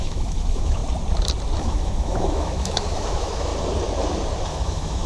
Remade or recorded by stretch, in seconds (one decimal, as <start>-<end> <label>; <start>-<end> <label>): 0.0-0.8 remade; 0.8-1.6 recorded; 1.6-3.5 remade; 3.5-4.5 recorded; 4.5-5.1 remade